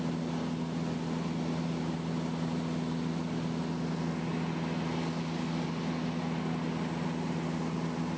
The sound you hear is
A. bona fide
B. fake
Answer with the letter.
A